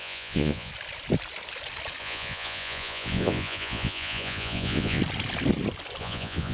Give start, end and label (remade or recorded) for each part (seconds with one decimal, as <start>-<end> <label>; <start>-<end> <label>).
0.0-0.7 remade; 0.7-2.0 recorded; 2.0-5.0 remade; 5.0-6.0 recorded; 6.0-6.5 remade

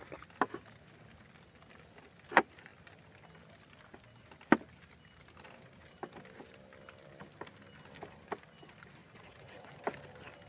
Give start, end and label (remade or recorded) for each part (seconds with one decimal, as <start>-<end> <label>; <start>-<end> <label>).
0.0-9.0 recorded; 9.0-9.7 remade; 9.7-10.5 recorded

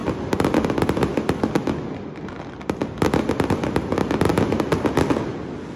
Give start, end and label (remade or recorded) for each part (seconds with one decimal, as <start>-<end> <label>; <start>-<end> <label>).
0.0-5.8 recorded

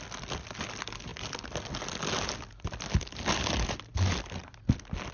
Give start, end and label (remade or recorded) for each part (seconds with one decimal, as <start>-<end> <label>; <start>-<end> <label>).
0.0-5.1 recorded

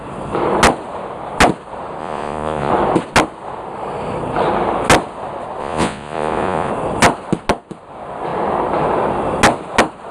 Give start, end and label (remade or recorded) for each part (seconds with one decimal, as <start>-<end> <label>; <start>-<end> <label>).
0.0-2.0 recorded; 2.0-2.7 remade; 2.7-5.6 recorded; 5.6-6.7 remade; 6.7-10.1 recorded

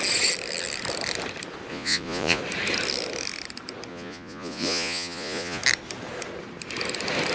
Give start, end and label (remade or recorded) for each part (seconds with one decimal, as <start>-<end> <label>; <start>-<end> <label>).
0.0-1.7 recorded; 1.7-2.4 remade; 2.4-3.9 recorded; 3.9-5.6 remade; 5.6-7.3 recorded

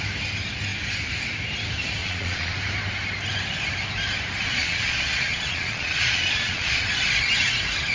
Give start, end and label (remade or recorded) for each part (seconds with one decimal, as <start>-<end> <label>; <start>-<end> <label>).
0.0-2.0 recorded; 2.0-2.5 remade; 2.5-4.6 recorded; 4.6-6.8 remade; 6.8-7.9 recorded